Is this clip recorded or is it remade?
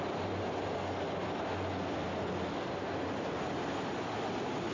recorded